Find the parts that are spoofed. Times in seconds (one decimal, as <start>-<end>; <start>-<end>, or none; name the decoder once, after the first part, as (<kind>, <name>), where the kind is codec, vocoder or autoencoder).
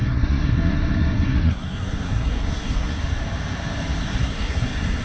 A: 0.0-3.0 (codec, SNAC); 4.0-5.0